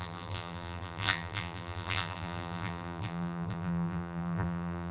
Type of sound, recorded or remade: remade